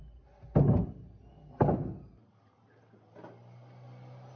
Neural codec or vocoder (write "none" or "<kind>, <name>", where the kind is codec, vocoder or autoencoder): none